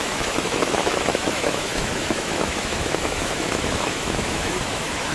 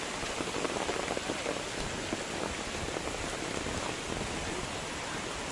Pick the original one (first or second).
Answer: second